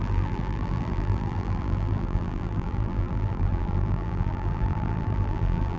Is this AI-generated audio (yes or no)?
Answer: yes